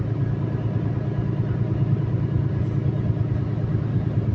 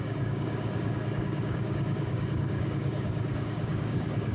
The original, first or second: first